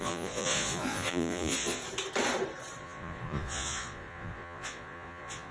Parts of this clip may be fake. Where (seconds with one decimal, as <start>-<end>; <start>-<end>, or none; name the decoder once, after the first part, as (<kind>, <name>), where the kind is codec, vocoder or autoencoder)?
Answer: 0.0-1.8 (vocoder, Vocos); 2.8-5.5